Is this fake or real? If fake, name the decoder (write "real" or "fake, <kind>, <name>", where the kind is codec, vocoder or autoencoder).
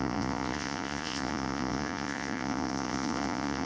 fake, vocoder, Vocos